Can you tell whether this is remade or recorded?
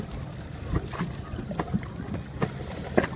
recorded